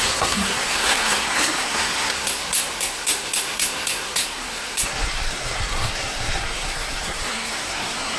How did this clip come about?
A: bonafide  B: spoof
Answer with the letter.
B